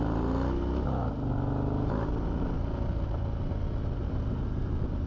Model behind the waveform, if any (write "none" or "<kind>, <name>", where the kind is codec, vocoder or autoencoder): none